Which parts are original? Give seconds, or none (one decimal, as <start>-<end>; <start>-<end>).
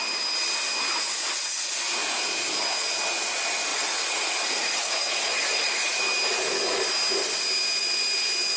0.0-3.7; 6.0-8.6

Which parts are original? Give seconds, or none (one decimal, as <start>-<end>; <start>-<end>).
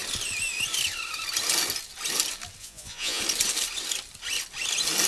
0.0-2.6; 3.2-5.1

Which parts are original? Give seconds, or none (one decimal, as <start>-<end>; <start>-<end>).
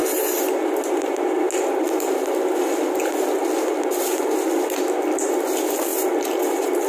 0.0-5.9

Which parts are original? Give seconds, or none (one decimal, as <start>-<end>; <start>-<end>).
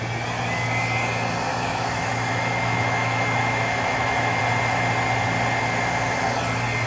0.0-1.5; 4.4-6.9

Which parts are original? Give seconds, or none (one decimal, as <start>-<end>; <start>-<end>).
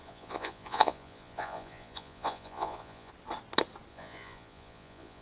3.1-3.9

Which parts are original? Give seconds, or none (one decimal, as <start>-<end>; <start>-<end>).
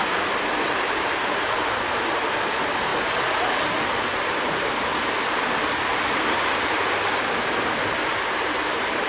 2.9-4.3; 4.9-8.7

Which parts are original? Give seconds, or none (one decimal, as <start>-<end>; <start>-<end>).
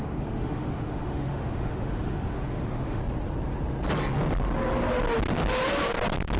3.0-6.4